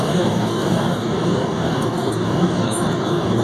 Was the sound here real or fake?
fake